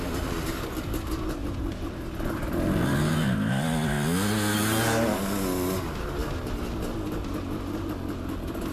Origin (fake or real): real